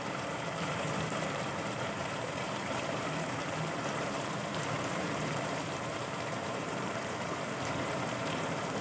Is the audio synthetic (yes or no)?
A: yes